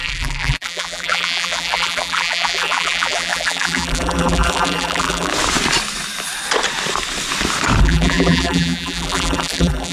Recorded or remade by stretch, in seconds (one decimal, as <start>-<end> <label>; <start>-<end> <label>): 0.0-5.3 remade; 5.3-7.8 recorded; 7.8-9.9 remade